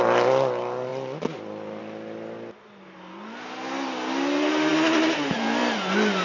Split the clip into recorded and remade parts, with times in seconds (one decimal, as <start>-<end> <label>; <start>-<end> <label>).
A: 0.0-6.2 recorded